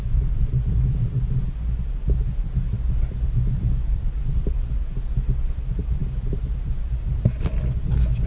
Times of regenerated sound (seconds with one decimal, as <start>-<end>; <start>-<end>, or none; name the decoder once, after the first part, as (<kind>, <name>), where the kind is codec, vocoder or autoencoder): none